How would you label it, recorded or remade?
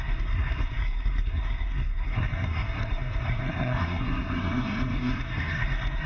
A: remade